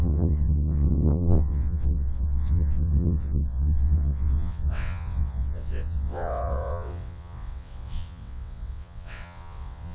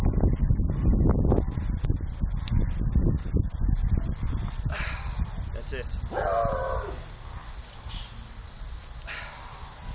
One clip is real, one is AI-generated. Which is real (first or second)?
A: second